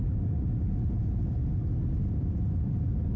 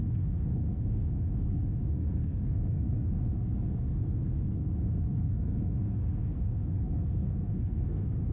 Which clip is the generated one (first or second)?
second